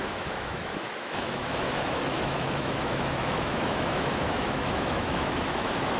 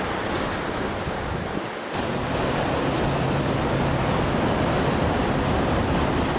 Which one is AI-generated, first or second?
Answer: first